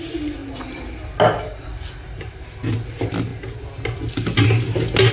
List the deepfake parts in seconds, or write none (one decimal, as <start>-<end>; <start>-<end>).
none